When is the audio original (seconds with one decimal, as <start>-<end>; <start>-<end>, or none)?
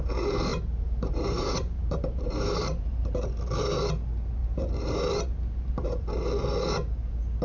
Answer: 0.0-0.5; 3.2-4.4; 6.3-7.4